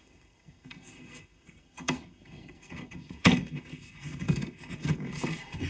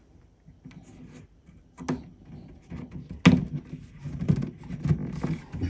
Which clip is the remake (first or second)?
first